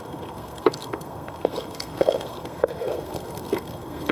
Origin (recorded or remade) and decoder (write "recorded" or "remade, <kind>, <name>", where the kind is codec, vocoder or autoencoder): remade, codec, SNAC